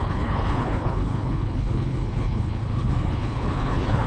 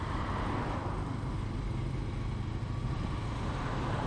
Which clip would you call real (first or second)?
second